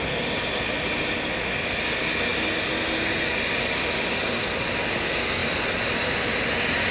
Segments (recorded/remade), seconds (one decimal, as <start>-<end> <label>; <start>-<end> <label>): 0.0-6.9 recorded